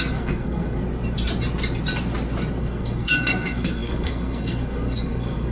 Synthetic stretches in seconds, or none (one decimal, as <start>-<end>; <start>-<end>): 0.0-0.8; 2.6-5.5